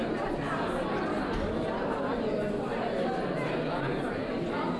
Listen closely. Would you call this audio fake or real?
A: real